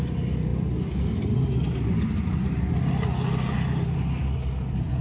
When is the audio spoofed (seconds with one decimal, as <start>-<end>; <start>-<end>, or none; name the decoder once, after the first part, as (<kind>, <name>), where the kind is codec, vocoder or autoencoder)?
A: none